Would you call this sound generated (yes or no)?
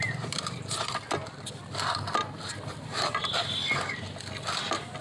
no